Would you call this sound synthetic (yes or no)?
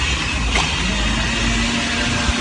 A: no